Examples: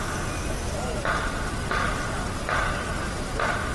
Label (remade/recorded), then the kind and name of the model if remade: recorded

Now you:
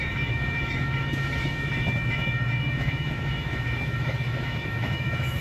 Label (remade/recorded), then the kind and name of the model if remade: remade, autoencoder, DAC-VAE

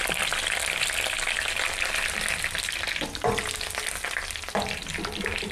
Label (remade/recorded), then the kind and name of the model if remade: recorded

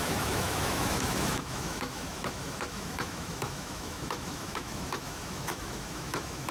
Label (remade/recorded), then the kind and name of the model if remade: remade, autoencoder, DAC-VAE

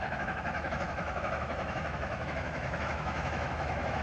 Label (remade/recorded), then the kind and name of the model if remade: remade, autoencoder, DAC-VAE